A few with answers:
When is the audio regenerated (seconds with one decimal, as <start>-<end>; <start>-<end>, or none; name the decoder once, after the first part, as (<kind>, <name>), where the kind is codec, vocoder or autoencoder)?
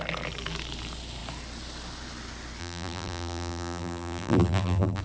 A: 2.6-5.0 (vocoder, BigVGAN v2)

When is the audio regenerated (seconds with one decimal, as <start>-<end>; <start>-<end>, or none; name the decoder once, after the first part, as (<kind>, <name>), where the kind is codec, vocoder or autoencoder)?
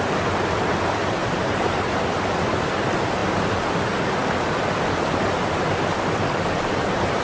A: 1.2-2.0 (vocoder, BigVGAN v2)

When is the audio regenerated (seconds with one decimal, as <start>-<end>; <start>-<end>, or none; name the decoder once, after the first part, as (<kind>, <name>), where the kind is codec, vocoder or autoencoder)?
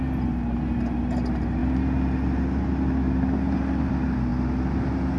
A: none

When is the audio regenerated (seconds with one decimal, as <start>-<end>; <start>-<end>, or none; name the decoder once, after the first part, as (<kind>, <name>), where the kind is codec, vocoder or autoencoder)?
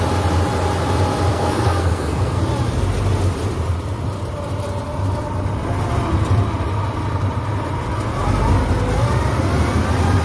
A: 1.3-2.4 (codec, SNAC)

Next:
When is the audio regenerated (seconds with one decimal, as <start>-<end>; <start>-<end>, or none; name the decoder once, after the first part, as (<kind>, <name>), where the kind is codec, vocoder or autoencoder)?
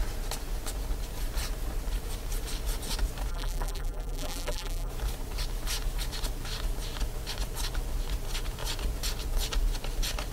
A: 3.3-4.9 (vocoder, BigVGAN v2)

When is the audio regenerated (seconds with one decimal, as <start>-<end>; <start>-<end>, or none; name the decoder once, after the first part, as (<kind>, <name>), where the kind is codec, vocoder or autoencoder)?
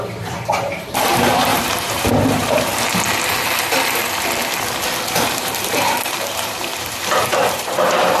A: 0.0-2.7 (vocoder, BigVGAN v2); 5.1-8.2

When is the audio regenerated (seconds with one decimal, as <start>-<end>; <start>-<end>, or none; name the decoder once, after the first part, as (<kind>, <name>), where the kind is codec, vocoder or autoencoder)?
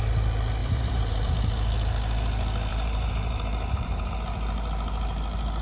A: 0.6-1.3 (vocoder, BigVGAN v2); 2.7-4.1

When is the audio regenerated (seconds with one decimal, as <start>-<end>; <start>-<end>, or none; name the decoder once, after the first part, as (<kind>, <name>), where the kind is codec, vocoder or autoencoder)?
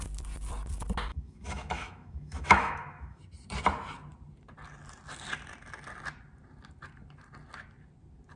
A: 1.1-3.2 (autoencoder, DAC-VAE)